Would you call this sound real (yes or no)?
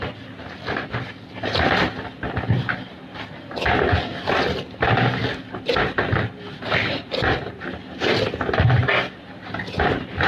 no